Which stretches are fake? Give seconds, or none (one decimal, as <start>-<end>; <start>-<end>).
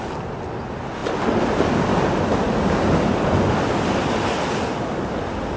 none